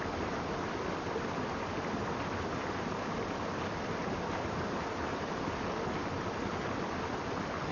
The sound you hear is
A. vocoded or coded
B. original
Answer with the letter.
B